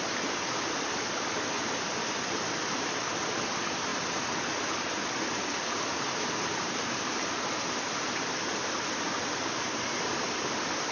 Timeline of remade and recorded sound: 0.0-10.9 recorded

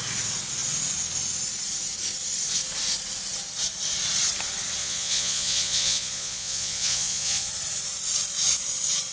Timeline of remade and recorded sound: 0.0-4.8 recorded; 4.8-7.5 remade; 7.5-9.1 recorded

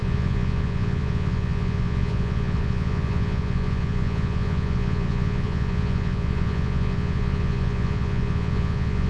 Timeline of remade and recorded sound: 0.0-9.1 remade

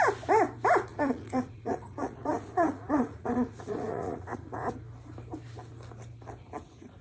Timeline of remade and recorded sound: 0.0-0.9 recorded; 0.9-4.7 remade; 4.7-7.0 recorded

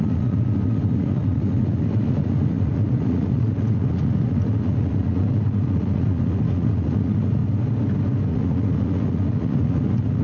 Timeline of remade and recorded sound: 0.0-7.4 remade; 7.4-8.3 recorded; 8.3-10.2 remade